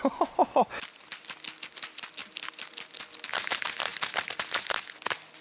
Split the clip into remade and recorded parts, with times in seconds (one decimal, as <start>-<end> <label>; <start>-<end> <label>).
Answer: 0.0-5.4 recorded